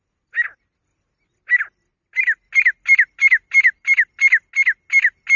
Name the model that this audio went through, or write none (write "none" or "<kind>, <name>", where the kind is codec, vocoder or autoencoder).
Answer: none